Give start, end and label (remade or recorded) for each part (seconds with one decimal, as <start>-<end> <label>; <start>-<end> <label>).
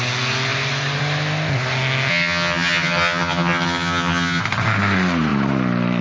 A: 0.0-2.1 recorded; 2.1-4.4 remade; 4.4-6.0 recorded